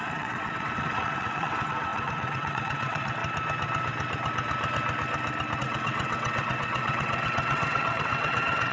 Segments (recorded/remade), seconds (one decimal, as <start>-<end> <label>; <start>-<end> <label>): 0.0-3.2 remade; 3.2-5.6 recorded; 5.6-8.7 remade